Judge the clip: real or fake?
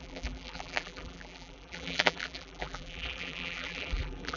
fake